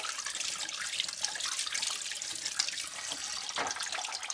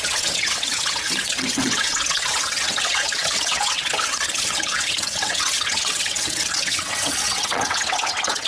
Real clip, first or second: first